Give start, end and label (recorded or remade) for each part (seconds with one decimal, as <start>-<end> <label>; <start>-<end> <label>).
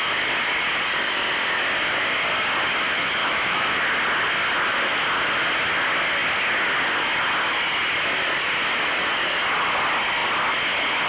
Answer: 0.0-3.2 recorded; 3.2-3.8 remade; 3.8-11.1 recorded